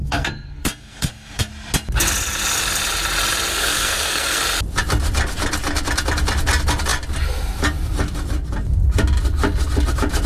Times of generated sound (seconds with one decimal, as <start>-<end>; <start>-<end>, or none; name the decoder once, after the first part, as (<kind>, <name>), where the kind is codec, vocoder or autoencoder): 0.0-1.5 (codec, SNAC); 3.5-4.4

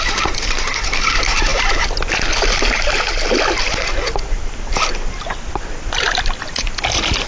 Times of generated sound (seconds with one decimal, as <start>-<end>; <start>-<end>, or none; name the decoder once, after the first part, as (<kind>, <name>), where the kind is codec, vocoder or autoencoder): none

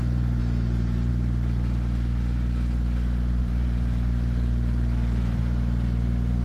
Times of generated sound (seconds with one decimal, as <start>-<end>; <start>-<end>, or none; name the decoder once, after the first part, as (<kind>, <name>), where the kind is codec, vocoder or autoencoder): 0.4-1.1 (vocoder, BigVGAN v2); 3.4-5.4

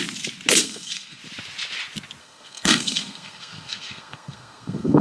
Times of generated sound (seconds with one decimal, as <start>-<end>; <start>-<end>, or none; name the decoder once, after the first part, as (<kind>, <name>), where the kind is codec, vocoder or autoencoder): 0.6-1.2 (codec, SNAC); 2.2-5.0

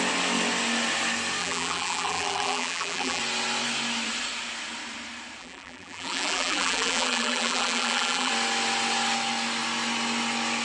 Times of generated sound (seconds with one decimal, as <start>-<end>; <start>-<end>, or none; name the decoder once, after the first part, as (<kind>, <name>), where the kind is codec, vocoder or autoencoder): 1.4-3.2 (vocoder, BigVGAN v2); 5.4-8.3

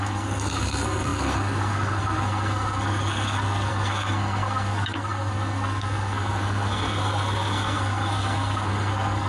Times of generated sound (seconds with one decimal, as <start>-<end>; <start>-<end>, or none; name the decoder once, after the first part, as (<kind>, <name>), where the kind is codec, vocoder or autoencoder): 0.0-9.3 (codec, SNAC)

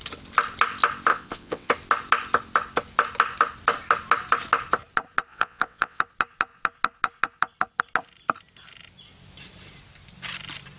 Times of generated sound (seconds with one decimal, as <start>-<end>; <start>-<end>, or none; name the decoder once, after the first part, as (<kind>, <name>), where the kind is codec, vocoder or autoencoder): 1.1-1.7 (vocoder, WaveNeXt); 5.3-6.0

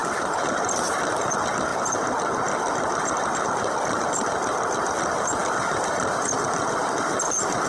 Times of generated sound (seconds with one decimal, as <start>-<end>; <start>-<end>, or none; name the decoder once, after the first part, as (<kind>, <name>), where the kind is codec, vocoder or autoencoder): 0.0-1.1 (vocoder, BigVGAN v2); 1.7-3.4